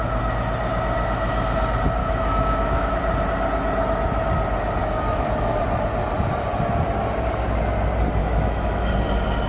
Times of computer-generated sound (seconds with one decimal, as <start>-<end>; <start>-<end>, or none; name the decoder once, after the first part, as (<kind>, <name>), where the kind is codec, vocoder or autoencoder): 2.0-2.9 (autoencoder, DAC-VAE); 4.8-5.6; 8.2-8.9